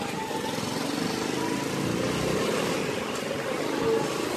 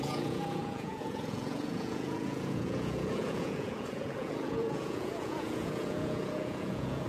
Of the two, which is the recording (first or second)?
first